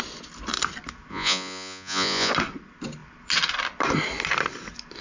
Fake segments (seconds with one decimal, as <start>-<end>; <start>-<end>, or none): 1.1-2.3